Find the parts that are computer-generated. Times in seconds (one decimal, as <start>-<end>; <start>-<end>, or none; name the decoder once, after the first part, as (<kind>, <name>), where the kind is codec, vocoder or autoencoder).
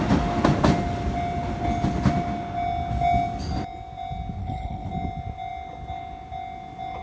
4.4-4.9 (codec, HILCodec)